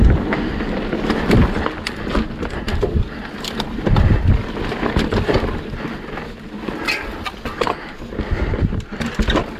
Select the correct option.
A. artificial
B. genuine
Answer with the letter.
B